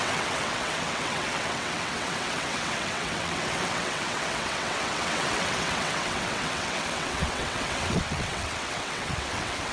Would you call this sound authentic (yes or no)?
no